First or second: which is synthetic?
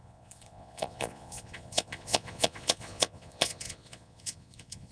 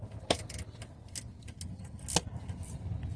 first